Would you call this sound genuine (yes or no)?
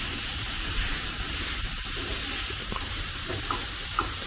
no